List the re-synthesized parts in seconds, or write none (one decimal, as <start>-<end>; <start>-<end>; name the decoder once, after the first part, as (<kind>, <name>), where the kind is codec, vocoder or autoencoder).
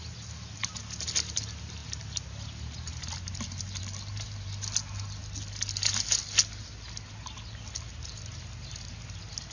none